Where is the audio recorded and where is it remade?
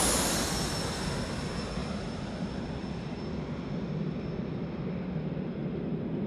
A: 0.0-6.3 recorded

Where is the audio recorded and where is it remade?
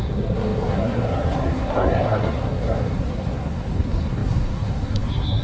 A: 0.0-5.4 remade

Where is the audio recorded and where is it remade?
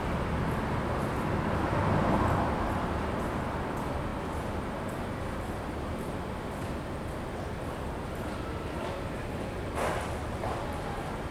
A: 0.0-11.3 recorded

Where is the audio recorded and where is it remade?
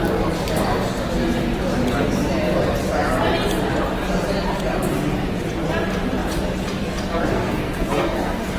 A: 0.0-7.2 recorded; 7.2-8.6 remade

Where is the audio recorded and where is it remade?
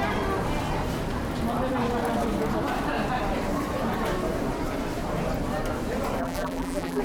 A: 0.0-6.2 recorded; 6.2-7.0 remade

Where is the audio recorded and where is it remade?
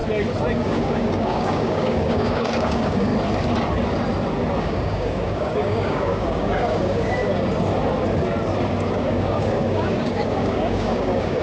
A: 0.0-0.5 recorded; 0.5-3.1 remade; 3.1-4.6 recorded; 4.6-7.2 remade; 7.2-8.9 recorded; 8.9-11.4 remade